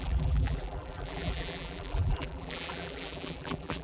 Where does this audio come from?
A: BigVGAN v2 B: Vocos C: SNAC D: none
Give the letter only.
A